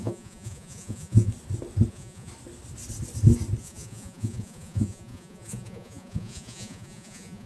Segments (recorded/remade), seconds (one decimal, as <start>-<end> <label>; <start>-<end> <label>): 0.0-1.3 remade; 1.3-1.9 recorded; 1.9-2.3 remade; 2.3-3.6 recorded; 3.6-7.5 remade